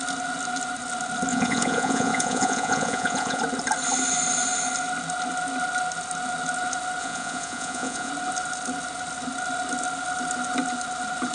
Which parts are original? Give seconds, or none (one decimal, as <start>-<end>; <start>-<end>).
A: 0.0-1.3; 3.4-7.0; 8.1-11.3